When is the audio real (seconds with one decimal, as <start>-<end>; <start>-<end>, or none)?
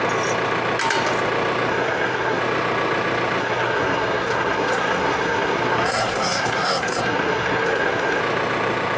0.0-1.7; 2.4-3.4; 8.2-9.0